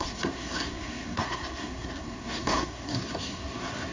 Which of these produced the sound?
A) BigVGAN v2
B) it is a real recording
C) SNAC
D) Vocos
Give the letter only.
C